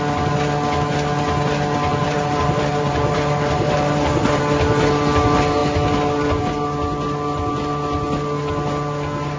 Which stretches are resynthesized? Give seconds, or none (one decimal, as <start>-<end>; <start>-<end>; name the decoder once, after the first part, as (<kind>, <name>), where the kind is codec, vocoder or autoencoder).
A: 1.9-4.4 (vocoder, BigVGAN v2)